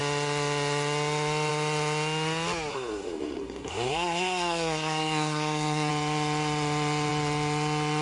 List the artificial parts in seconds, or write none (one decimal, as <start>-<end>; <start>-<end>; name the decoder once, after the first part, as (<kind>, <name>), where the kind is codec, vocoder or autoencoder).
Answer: 2.7-5.9 (codec, SNAC)